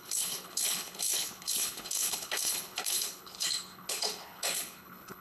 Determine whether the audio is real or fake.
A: fake